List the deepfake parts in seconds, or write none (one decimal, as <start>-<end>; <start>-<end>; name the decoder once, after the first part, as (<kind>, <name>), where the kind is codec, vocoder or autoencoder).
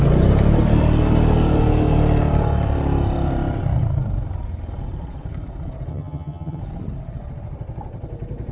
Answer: 5.9-6.6 (vocoder, HiFi-GAN)